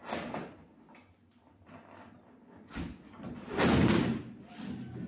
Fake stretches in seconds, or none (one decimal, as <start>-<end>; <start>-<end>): none